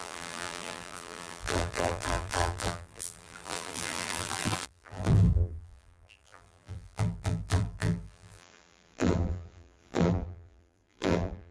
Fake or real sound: fake